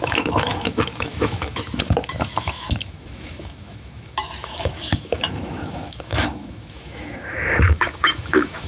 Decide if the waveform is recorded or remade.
remade